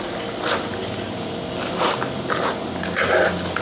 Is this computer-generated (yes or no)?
no